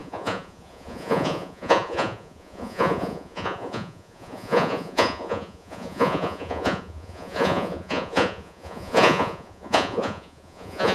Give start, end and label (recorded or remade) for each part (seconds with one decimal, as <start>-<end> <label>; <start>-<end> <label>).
0.0-10.9 remade